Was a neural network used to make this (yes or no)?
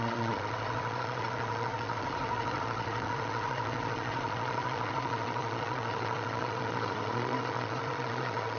yes